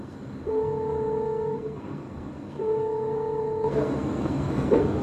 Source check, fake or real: fake